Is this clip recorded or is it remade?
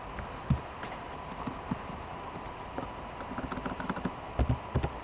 recorded